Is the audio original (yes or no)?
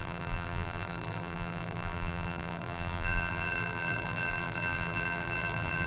no